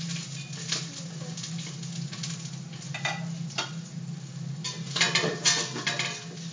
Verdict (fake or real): real